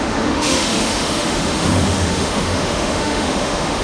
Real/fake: fake